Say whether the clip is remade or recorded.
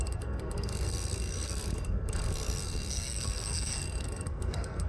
remade